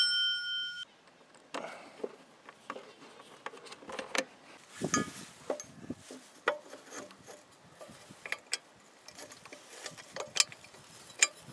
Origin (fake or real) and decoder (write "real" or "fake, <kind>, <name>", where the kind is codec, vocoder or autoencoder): real